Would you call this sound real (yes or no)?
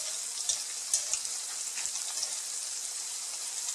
yes